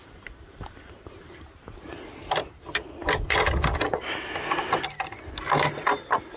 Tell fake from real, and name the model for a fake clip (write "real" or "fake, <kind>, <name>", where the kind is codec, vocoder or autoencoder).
real